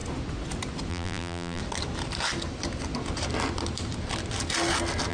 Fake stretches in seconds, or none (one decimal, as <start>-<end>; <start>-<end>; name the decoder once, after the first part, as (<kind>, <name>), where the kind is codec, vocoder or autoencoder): 0.9-1.6 (vocoder, BigVGAN v2)